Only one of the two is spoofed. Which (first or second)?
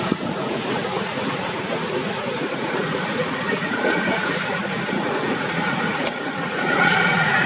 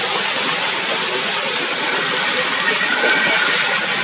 first